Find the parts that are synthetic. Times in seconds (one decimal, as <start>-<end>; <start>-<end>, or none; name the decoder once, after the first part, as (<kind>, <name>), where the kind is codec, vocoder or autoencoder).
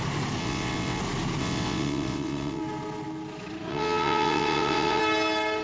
0.4-1.0 (vocoder, WaveNeXt); 1.4-2.6; 3.7-5.0